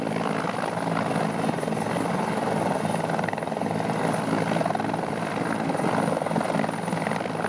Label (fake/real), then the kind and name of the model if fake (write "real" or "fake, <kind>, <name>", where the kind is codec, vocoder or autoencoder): real